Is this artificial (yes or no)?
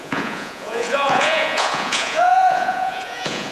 yes